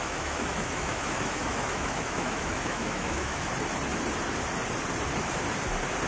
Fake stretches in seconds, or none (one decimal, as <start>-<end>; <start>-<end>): 0.0-3.5

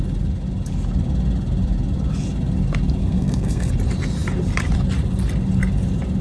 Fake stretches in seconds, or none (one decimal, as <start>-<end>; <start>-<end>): 3.0-3.7

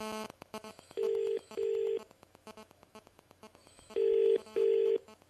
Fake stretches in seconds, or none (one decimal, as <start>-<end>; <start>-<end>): 0.0-5.3

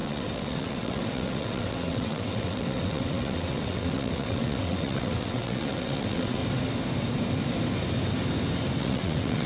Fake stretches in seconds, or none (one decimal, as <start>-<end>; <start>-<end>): 0.0-6.4; 8.8-9.5

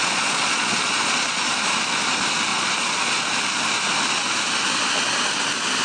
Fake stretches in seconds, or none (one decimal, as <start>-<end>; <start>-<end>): 0.0-1.5; 2.5-3.2

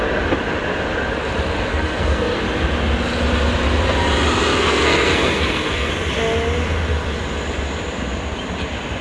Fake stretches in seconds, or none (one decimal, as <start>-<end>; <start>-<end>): 1.7-2.4; 4.5-5.9

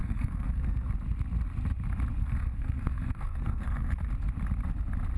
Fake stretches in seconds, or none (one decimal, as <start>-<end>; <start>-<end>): 0.0-0.9; 2.2-4.1

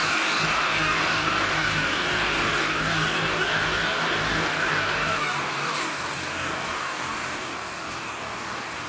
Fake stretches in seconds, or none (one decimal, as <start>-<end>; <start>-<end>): 0.0-8.9